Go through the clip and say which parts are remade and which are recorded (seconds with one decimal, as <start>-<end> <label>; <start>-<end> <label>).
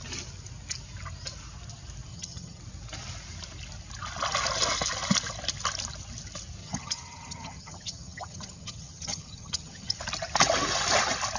0.0-2.1 recorded; 2.1-2.6 remade; 2.6-6.6 recorded; 6.6-10.0 remade; 10.0-11.4 recorded